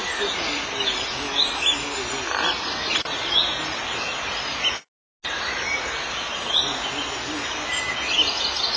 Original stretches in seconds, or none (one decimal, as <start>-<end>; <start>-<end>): 0.0-8.8